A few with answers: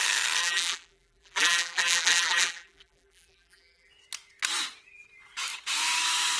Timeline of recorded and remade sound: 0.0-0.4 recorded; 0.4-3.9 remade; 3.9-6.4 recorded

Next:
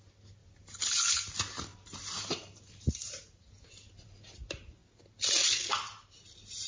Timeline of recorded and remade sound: 0.0-0.4 recorded; 0.4-1.1 remade; 1.1-1.7 recorded; 1.7-3.4 remade; 3.4-6.7 recorded

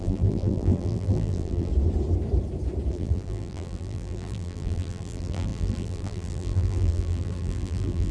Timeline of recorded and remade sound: 0.0-1.7 remade; 1.7-2.9 recorded; 2.9-8.1 remade

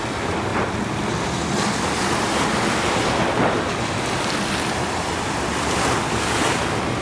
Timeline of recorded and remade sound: 0.0-7.0 recorded